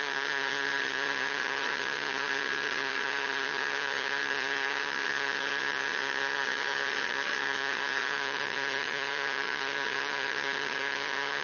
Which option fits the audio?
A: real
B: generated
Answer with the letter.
B